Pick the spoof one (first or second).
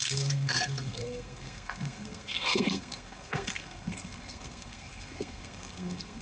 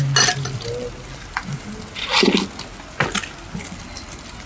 first